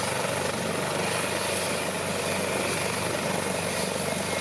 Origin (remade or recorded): recorded